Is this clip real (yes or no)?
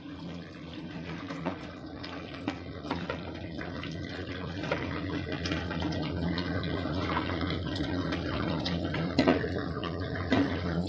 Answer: no